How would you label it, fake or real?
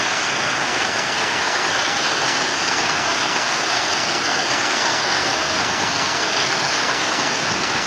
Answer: fake